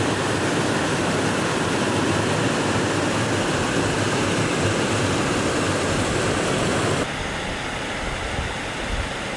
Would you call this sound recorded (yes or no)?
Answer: yes